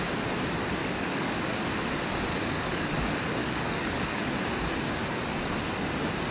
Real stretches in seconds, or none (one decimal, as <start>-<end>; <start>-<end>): 0.0-0.8; 1.6-2.3; 2.9-3.4; 4.3-6.3